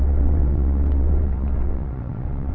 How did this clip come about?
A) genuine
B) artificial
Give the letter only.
B